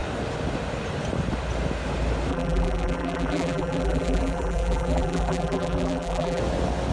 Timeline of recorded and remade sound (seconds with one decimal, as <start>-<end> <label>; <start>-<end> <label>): 0.0-2.3 recorded; 2.3-6.4 remade; 6.4-6.9 recorded